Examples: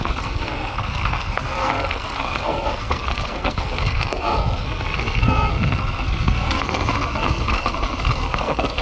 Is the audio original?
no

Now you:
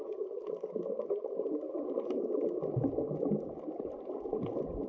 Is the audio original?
yes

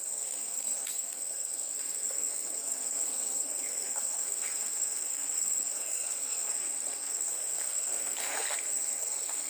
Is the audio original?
no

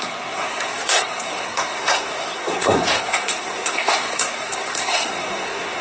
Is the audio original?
no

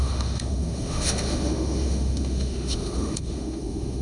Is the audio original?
no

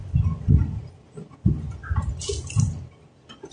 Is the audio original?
yes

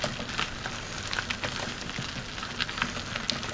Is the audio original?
yes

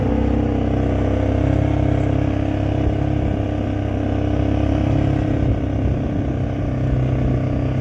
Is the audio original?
yes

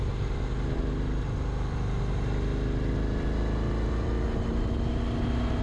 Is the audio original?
yes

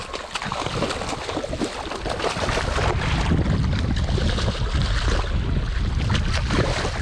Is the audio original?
yes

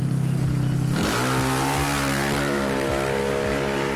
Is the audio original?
yes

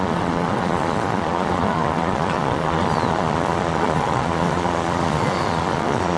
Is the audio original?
no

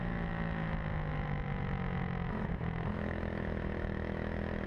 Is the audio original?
no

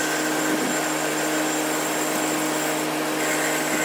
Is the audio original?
yes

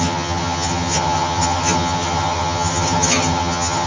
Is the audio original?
no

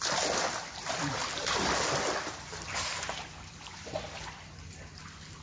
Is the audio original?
yes